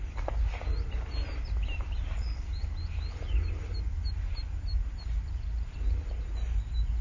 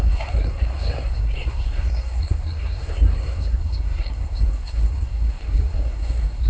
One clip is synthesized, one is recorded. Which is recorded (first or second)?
first